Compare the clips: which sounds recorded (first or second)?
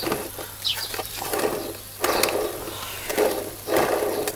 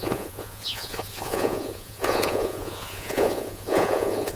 first